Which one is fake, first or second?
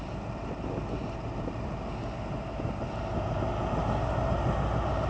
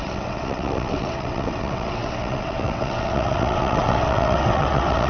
second